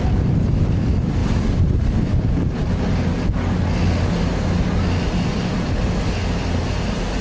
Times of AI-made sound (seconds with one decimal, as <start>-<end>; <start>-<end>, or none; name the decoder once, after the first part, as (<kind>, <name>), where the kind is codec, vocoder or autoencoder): none